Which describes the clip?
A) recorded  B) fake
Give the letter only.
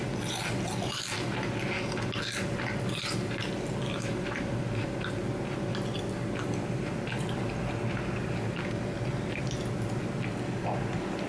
A